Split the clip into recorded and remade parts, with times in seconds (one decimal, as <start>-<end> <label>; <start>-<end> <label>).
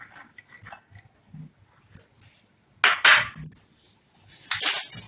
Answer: 0.0-5.1 recorded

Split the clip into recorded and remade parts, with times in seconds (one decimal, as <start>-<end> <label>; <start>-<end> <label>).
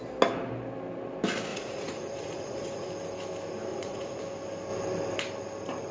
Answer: 0.0-1.5 recorded; 1.5-2.9 remade; 2.9-3.7 recorded; 3.7-4.2 remade; 4.2-5.9 recorded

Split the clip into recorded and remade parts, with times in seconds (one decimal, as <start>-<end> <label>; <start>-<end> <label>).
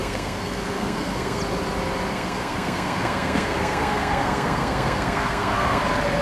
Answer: 0.0-1.4 remade; 1.4-2.1 recorded; 2.1-5.8 remade; 5.8-6.2 recorded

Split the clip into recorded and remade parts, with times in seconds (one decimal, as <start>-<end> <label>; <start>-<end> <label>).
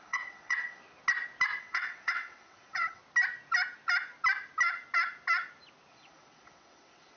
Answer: 0.0-0.8 remade; 0.8-1.6 recorded; 1.6-3.0 remade; 3.0-5.9 recorded; 5.9-7.2 remade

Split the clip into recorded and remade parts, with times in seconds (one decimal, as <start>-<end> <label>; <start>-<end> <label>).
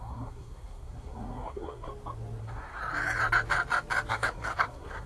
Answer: 0.0-1.9 remade; 1.9-2.4 recorded; 2.4-2.8 remade; 2.8-4.1 recorded; 4.1-5.1 remade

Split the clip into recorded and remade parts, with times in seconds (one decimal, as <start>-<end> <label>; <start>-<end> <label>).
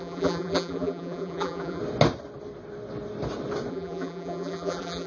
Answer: 0.0-1.8 remade; 1.8-3.7 recorded; 3.7-5.1 remade